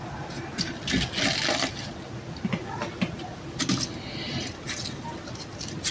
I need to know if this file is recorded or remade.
recorded